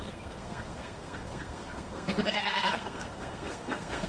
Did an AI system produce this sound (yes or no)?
yes